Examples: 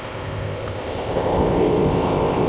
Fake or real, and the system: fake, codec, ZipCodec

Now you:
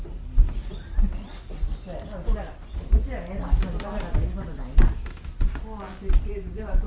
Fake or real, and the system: real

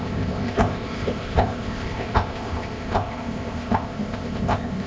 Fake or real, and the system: fake, codec, ZipCodec